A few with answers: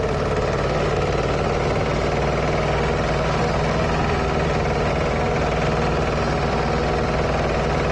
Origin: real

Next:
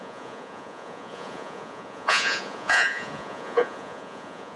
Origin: fake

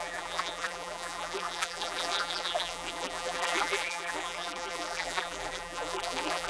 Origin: fake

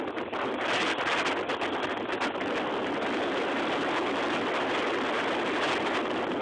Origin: real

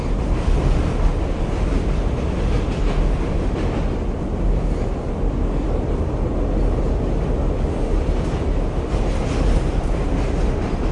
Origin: real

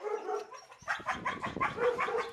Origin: fake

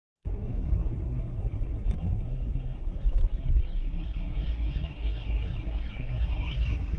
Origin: fake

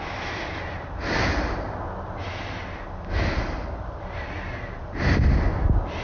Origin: real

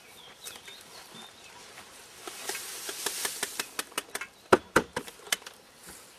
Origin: fake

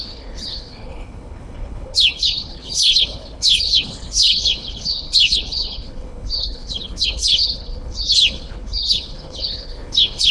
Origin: fake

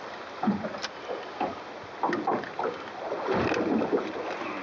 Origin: real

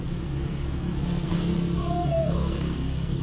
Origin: fake